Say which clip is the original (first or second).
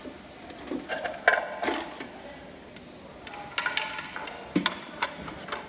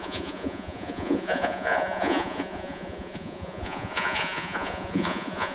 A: first